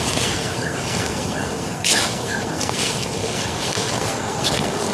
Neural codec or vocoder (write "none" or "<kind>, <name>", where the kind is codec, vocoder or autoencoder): codec, SNAC